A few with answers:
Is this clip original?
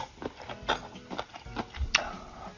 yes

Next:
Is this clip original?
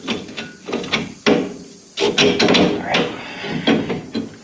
yes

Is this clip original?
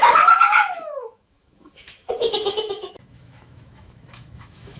no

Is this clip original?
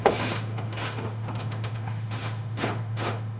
no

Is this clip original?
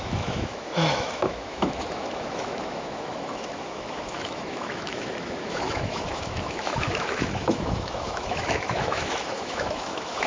no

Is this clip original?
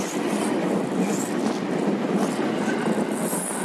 yes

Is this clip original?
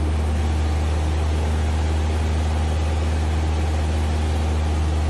yes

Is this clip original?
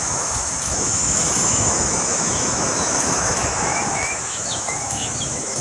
no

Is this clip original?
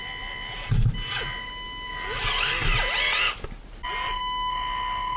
yes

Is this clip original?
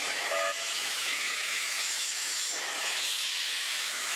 no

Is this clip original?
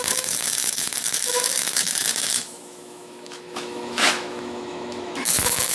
no